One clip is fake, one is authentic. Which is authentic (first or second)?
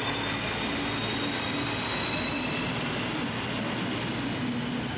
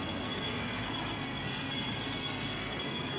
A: first